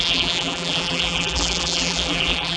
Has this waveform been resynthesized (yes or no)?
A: yes